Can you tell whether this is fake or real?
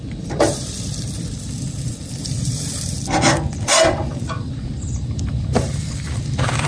fake